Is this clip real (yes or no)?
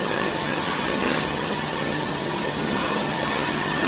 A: no